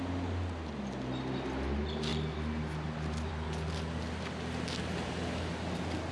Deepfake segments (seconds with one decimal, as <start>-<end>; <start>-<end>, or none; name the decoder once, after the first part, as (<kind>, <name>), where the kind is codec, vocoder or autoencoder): none

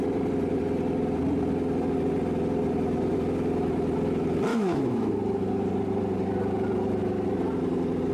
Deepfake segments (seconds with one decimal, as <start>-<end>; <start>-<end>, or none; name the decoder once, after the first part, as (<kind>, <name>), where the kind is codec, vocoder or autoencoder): 4.5-5.1 (autoencoder, DAC-VAE)